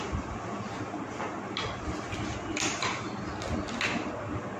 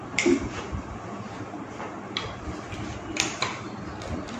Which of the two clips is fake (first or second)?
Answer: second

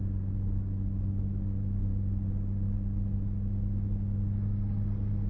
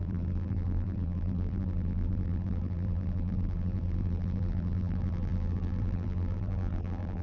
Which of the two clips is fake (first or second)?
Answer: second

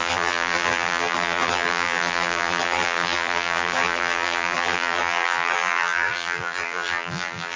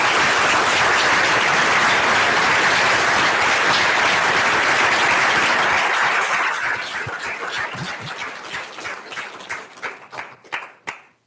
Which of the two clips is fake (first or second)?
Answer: first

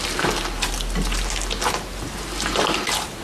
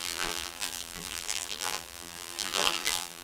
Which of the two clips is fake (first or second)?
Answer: second